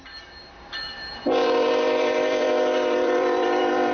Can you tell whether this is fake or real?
fake